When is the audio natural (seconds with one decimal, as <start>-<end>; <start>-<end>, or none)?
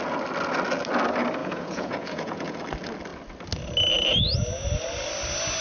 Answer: 0.0-1.4; 2.6-5.6